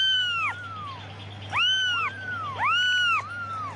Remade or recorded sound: recorded